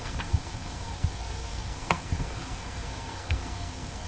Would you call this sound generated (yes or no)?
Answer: yes